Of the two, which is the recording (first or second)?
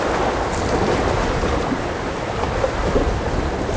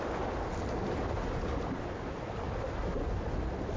second